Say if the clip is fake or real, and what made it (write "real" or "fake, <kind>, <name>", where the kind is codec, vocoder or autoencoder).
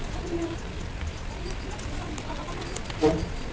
real